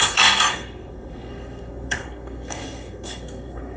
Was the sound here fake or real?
fake